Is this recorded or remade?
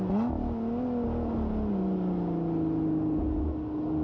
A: recorded